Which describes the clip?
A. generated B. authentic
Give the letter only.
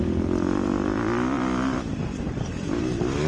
B